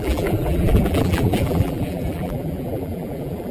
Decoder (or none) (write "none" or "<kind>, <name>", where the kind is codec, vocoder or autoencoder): vocoder, BigVGAN v2